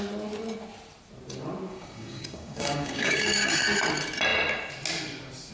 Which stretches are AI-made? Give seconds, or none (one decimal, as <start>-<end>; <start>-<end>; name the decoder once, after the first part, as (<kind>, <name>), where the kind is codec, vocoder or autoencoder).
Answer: 1.7-3.6 (codec, DAC)